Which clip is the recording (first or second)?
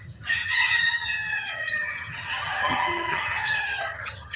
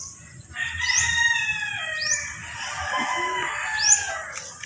second